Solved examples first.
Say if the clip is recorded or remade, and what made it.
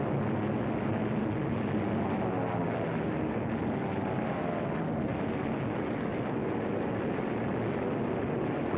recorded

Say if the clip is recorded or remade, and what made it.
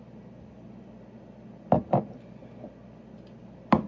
recorded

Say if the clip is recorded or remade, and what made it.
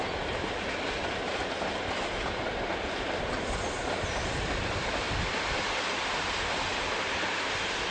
recorded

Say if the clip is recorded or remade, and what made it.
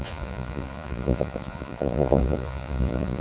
remade, vocoder, Vocos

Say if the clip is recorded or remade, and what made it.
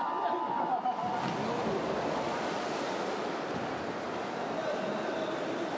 recorded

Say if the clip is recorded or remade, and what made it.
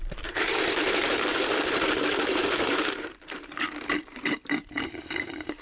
remade, vocoder, BigVGAN v2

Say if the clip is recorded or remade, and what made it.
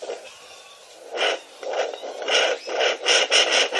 remade, vocoder, BigVGAN v2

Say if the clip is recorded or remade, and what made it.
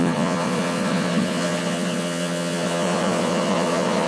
remade, vocoder, Vocos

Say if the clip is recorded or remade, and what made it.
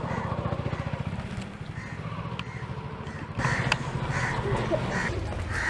recorded